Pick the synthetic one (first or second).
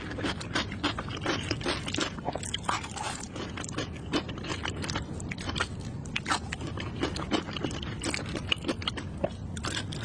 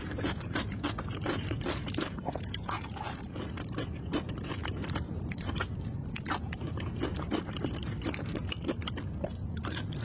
second